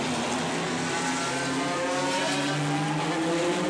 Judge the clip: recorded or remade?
recorded